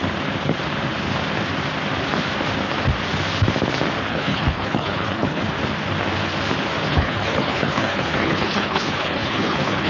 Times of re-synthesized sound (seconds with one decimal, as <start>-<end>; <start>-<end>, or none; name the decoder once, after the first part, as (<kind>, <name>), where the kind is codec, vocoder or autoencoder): 4.1-5.4 (codec, HILCodec); 6.9-9.9